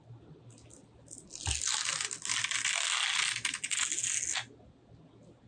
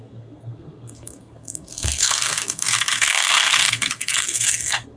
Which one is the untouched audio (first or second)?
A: first